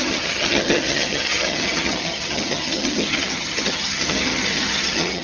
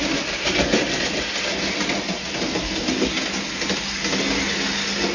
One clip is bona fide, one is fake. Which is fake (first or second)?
first